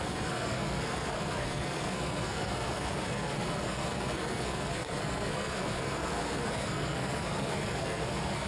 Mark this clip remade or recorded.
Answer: remade